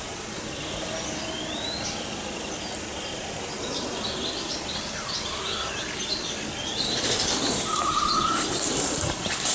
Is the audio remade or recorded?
recorded